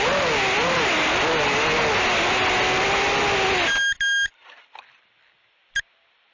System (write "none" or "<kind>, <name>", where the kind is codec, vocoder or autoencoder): none